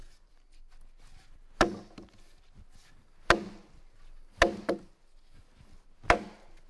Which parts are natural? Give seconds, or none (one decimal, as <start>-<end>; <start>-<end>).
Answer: 0.0-6.7

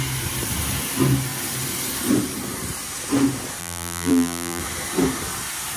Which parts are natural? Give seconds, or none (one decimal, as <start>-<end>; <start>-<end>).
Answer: 0.0-3.6; 4.6-5.8

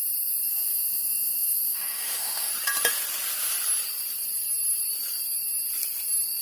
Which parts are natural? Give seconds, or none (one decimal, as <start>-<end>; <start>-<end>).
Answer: 0.0-0.5; 2.5-6.4

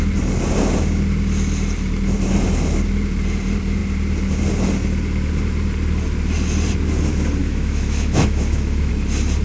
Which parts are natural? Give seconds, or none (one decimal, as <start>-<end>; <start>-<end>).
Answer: 0.0-7.4; 8.9-9.4

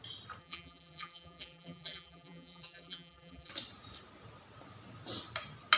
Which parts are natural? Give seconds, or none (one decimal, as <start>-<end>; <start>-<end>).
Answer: 0.0-0.4; 3.5-5.8